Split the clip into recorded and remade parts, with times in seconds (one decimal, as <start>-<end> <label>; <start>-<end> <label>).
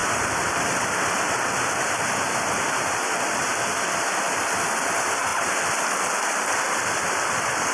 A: 0.0-7.7 recorded